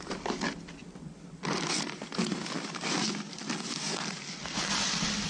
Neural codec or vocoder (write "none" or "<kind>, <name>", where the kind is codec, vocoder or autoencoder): none